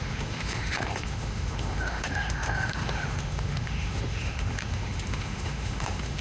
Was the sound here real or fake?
fake